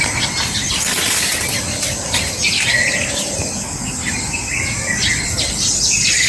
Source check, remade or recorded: recorded